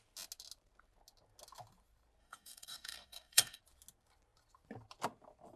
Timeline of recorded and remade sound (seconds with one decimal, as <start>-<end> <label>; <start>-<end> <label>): 0.0-2.2 recorded; 2.2-3.6 remade; 3.6-5.6 recorded